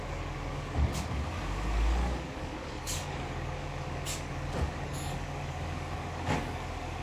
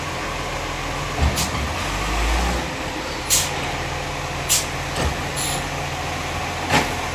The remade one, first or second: first